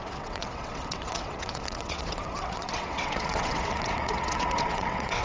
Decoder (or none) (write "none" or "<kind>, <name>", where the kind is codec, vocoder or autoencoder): vocoder, WaveNeXt